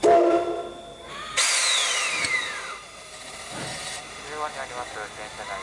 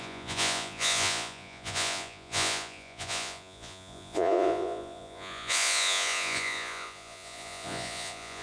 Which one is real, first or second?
first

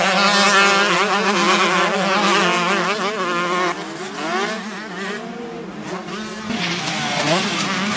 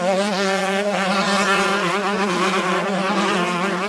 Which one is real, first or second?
first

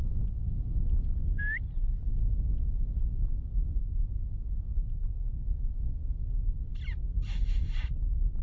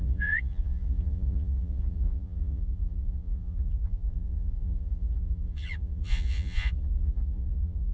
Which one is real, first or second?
first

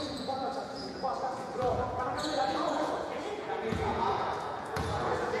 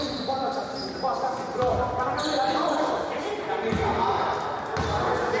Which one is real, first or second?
second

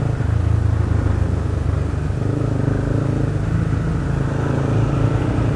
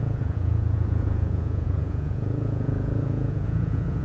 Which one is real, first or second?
first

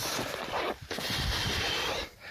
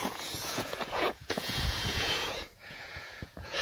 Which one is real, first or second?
first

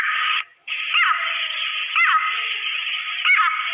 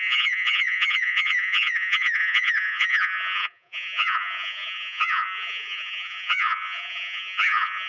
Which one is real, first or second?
first